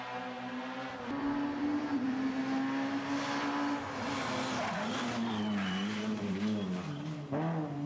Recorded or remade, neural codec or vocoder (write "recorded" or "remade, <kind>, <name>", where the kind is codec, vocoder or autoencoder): recorded